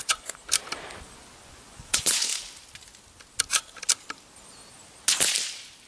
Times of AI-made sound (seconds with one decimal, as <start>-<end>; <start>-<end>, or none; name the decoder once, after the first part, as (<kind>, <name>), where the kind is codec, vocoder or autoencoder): 0.0-0.4 (vocoder, Vocos); 1.1-2.3